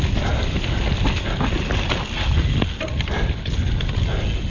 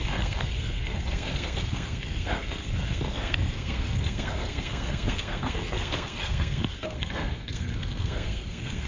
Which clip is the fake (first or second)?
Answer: second